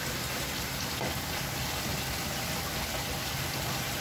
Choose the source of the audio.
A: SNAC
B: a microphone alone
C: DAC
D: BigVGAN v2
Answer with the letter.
B